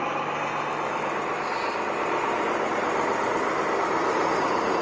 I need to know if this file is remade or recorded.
recorded